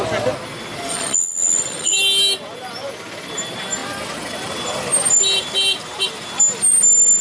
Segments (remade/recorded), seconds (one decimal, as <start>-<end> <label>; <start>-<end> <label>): 0.0-0.9 recorded; 0.9-1.9 remade; 1.9-7.2 recorded